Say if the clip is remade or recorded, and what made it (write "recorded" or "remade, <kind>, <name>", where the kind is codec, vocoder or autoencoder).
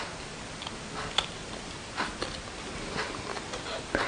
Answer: recorded